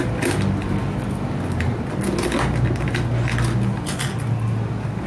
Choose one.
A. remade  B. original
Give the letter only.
B